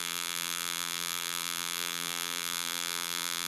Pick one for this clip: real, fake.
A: fake